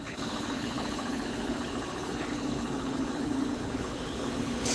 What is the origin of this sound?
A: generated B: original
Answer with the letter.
A